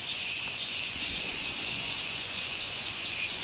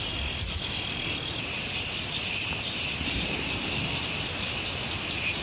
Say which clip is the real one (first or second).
second